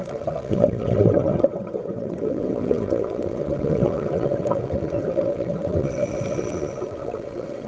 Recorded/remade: remade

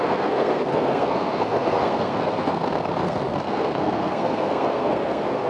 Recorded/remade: remade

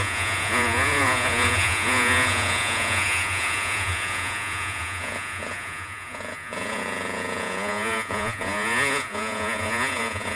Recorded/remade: remade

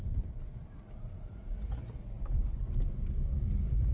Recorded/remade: recorded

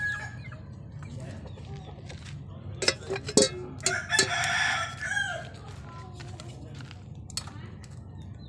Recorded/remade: recorded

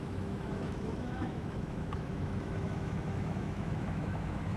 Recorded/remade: remade